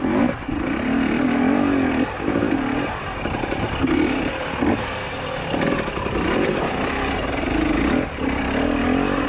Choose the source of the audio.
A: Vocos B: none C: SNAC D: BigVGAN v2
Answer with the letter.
B